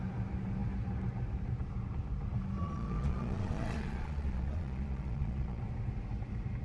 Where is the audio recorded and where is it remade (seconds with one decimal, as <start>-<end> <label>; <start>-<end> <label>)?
0.0-2.6 recorded; 2.6-5.6 remade; 5.6-6.6 recorded